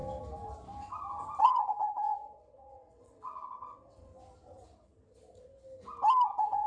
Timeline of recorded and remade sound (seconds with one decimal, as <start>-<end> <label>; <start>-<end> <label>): 0.0-1.4 recorded; 1.4-4.1 remade; 4.1-6.3 recorded; 6.3-6.7 remade